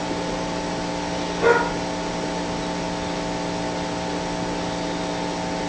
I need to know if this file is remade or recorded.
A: recorded